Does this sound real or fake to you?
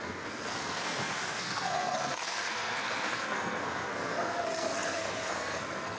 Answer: fake